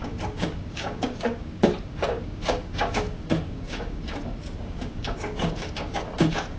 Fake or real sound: fake